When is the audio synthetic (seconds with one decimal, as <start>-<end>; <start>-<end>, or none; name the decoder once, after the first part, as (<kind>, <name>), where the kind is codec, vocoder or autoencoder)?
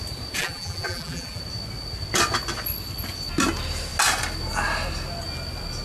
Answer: 0.4-1.4 (vocoder, BigVGAN v2)